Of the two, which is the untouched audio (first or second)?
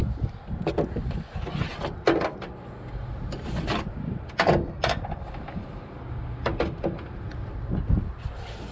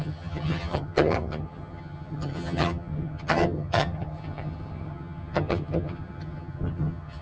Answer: first